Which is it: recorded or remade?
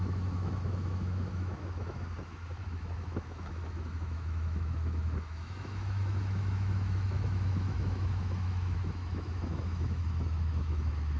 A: remade